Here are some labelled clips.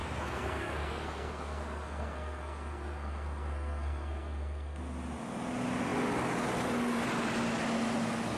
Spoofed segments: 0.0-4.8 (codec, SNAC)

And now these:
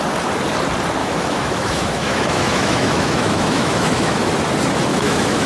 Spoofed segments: 1.0-4.3 (autoencoder, DAC-VAE); 4.9-5.5

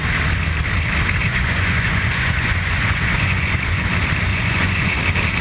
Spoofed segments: 1.2-3.9 (vocoder, Vocos); 4.3-5.0

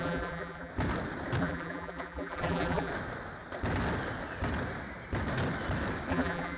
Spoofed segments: 0.0-0.7 (vocoder, BigVGAN v2); 1.4-2.9; 6.1-6.6